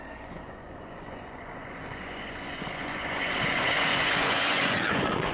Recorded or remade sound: remade